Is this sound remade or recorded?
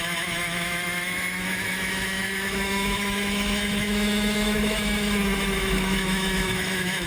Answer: remade